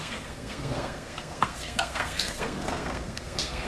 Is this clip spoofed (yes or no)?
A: yes